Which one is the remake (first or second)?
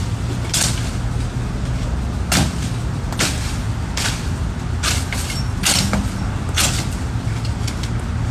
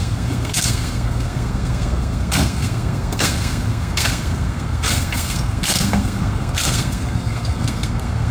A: second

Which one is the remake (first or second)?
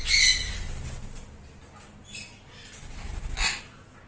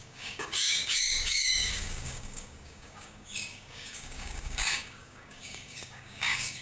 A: second